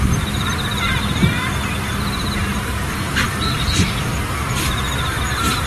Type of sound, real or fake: fake